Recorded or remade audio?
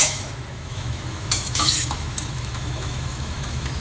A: remade